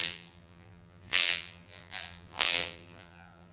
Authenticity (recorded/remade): remade